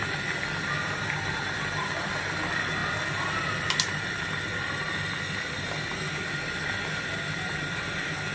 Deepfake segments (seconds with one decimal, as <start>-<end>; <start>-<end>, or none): none